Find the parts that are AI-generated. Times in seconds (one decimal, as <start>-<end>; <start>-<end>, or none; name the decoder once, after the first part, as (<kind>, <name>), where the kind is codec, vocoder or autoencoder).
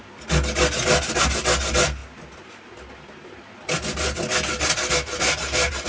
none